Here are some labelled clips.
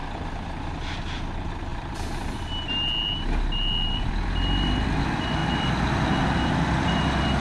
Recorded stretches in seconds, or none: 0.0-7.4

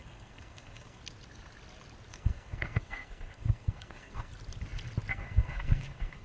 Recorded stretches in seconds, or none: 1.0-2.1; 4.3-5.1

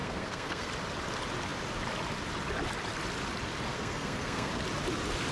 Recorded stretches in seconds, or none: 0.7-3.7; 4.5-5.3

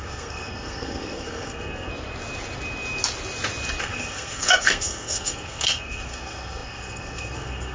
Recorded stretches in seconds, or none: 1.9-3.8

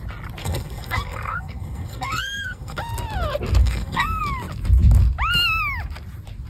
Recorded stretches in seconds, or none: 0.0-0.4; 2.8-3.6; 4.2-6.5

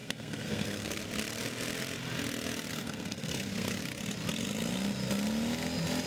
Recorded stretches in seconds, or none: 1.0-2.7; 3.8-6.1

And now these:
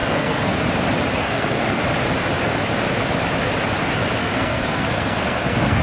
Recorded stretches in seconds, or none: 0.5-1.2; 1.8-4.2